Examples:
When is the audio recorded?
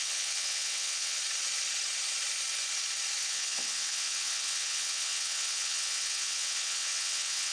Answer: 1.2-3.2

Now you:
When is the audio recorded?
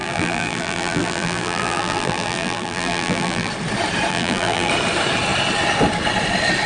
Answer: 3.5-4.1; 4.7-6.7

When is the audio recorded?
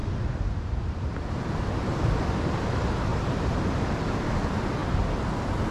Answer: 1.3-3.1; 4.3-5.7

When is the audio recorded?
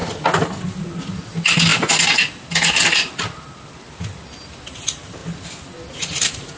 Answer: 0.0-6.6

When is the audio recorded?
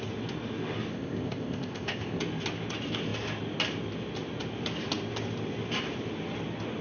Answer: 0.0-0.9; 2.2-6.8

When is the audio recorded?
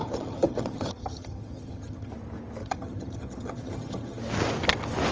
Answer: 2.1-2.6; 4.2-5.1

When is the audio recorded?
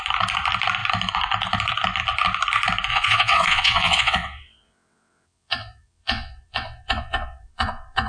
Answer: 0.0-2.9